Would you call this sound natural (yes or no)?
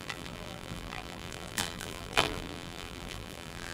no